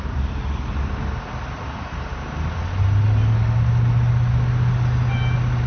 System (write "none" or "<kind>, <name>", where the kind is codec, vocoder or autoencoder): none